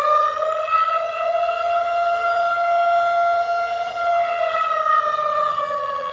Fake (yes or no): yes